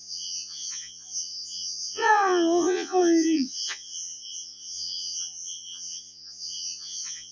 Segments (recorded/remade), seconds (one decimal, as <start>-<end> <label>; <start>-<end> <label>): 0.0-7.3 remade